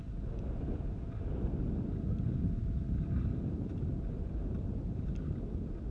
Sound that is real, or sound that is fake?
real